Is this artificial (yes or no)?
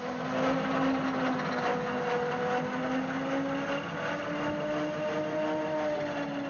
no